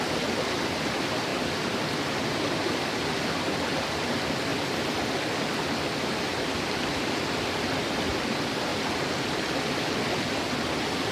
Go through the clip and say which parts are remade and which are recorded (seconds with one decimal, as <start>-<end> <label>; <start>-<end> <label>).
0.0-11.1 recorded